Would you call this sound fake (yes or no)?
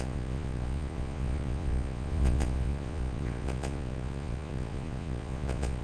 yes